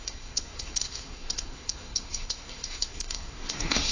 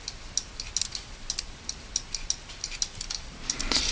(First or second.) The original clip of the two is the second